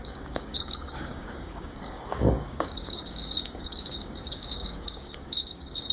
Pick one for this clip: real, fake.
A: fake